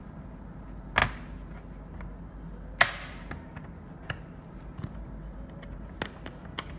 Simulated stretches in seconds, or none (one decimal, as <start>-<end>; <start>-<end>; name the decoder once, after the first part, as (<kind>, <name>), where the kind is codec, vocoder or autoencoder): none